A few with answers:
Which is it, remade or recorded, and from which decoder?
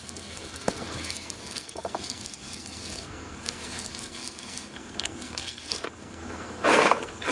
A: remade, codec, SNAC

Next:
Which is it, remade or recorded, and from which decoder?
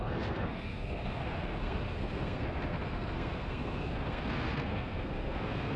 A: remade, codec, SNAC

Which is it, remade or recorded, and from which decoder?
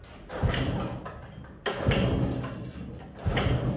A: recorded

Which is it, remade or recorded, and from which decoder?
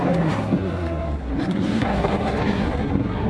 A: remade, codec, SNAC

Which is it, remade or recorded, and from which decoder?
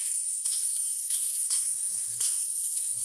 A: remade, codec, SNAC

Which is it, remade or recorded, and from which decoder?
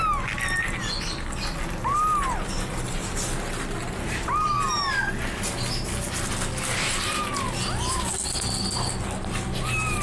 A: recorded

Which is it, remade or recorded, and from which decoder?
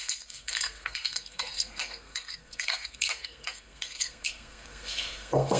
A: remade, codec, SNAC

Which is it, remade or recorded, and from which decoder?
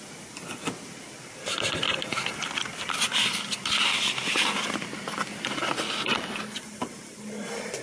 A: recorded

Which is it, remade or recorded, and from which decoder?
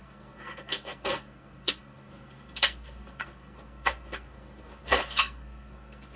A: remade, codec, SNAC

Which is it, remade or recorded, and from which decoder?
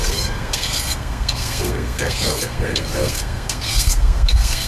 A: remade, codec, SNAC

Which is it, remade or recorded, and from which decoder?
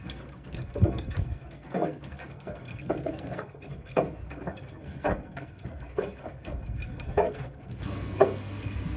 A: remade, codec, SNAC